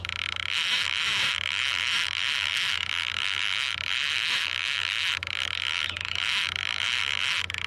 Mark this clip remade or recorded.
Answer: remade